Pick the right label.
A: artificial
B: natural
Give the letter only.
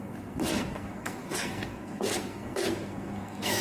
A